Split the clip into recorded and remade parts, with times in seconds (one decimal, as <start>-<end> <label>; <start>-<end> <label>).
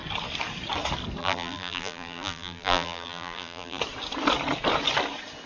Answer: 0.0-1.2 recorded; 1.2-3.8 remade; 3.8-5.5 recorded